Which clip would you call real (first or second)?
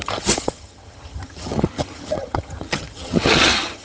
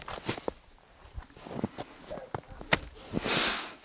second